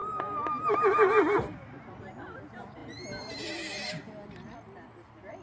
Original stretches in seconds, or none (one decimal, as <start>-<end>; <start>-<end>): 2.4-5.4